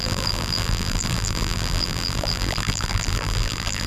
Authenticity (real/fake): fake